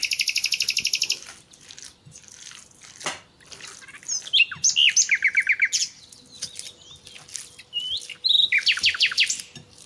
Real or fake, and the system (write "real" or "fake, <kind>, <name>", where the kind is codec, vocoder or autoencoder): real